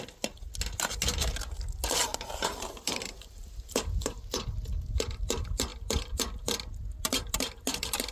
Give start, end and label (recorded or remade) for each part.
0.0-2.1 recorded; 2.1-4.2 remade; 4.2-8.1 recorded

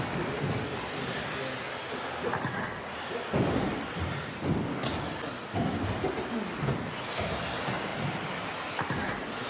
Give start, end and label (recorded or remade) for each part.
0.0-9.5 recorded

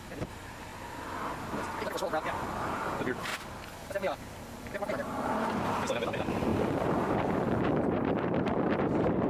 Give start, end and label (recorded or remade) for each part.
0.0-0.7 remade; 0.7-2.6 recorded; 2.6-3.3 remade; 3.3-4.2 recorded; 4.2-9.3 remade

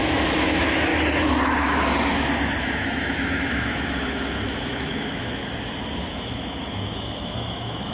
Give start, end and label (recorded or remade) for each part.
0.0-0.9 remade; 0.9-2.6 recorded; 2.6-5.4 remade; 5.4-6.1 recorded; 6.1-7.9 remade